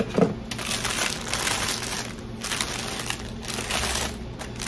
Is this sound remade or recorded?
recorded